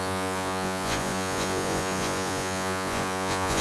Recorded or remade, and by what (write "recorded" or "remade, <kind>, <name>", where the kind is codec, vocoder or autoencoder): remade, vocoder, Vocos